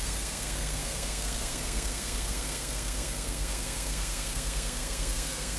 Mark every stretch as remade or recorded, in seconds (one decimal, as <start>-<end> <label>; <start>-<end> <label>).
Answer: 0.0-5.6 remade